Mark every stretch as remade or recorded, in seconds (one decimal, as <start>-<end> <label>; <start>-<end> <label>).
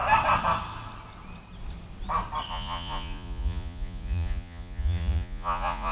0.0-2.5 recorded; 2.5-5.9 remade